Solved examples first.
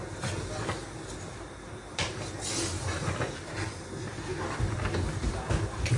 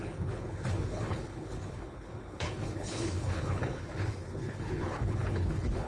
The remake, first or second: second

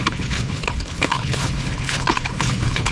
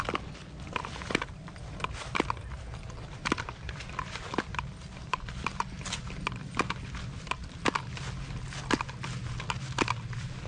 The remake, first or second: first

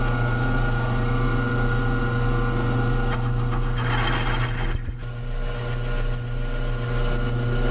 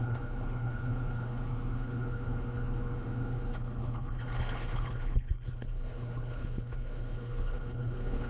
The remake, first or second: second